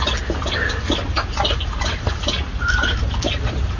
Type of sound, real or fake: real